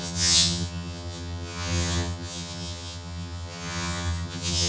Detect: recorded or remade remade